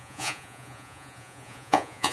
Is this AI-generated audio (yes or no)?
yes